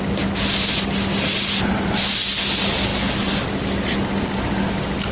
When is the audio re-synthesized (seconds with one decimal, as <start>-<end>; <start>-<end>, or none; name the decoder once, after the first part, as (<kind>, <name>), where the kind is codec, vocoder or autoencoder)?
none